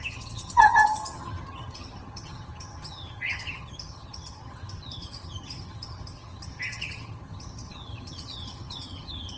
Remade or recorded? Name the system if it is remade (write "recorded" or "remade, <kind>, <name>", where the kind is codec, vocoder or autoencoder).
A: remade, vocoder, HiFi-GAN